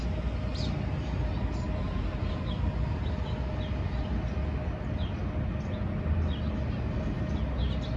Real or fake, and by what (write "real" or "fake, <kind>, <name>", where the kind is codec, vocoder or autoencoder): real